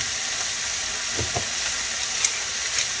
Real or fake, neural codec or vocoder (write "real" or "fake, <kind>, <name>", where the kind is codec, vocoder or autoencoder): real